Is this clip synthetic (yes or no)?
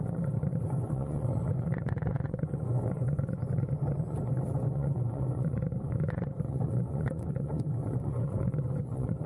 yes